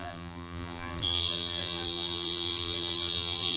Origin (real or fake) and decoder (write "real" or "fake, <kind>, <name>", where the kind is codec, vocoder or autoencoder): fake, vocoder, BigVGAN v2